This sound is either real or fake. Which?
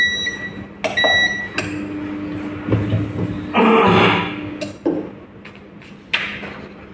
real